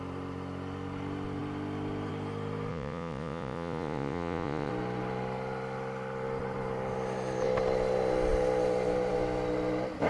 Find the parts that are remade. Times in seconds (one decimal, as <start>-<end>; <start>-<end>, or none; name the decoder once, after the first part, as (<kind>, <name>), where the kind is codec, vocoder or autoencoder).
2.7-4.7 (vocoder, Vocos)